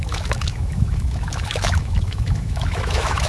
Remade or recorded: remade